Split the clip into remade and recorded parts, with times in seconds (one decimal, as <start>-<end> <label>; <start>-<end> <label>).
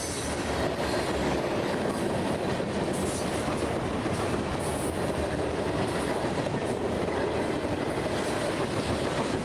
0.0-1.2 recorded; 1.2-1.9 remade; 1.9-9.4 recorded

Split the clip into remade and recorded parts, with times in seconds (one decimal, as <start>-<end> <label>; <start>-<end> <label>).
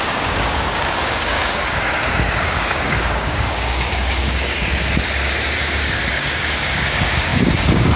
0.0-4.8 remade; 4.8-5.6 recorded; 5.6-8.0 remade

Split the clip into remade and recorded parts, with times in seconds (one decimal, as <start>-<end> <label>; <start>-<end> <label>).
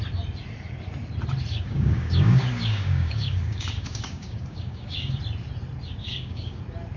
0.0-1.5 recorded; 1.5-5.2 remade; 5.2-6.0 recorded; 6.0-6.6 remade; 6.6-7.0 recorded